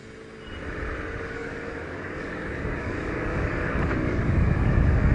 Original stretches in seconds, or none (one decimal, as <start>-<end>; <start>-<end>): 0.0-1.3